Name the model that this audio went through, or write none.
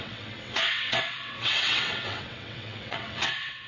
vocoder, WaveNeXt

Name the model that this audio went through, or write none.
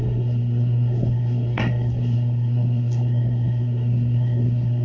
codec, SNAC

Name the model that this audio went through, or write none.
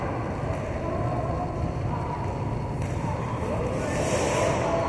none